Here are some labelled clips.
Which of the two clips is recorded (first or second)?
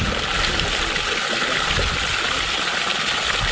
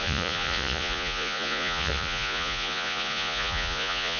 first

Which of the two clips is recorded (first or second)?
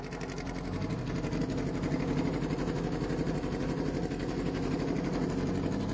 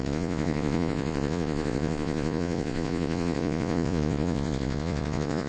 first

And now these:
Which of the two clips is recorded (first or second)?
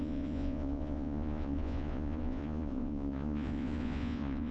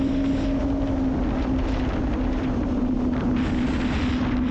second